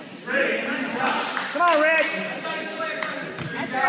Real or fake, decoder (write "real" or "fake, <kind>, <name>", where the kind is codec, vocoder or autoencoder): real